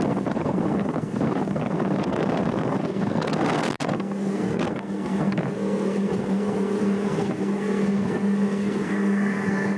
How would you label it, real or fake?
fake